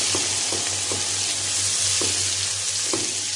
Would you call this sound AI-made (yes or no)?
no